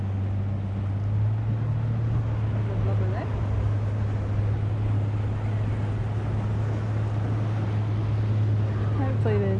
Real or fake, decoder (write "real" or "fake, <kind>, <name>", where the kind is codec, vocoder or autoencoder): real